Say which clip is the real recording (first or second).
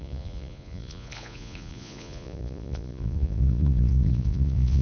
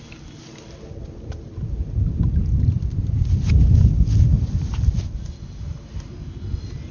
second